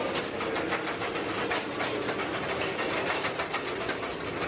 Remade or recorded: recorded